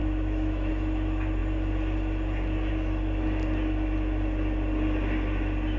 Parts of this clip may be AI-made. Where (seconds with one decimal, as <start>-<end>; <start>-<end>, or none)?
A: 0.0-0.7